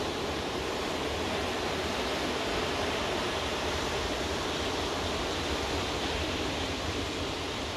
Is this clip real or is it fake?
real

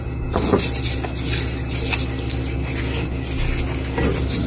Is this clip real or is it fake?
real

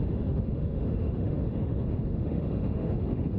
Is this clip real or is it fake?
fake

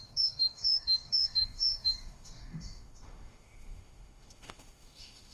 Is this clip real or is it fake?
fake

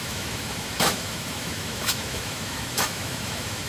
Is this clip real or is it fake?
fake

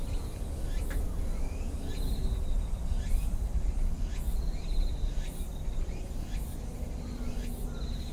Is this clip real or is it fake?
real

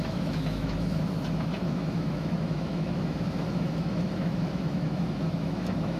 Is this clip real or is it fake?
fake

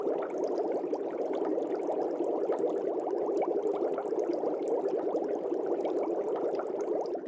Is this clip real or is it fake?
real